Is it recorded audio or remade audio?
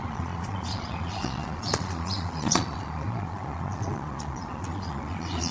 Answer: remade